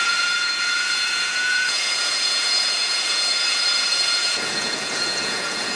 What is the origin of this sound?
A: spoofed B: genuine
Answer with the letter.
A